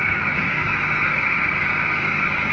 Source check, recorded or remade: remade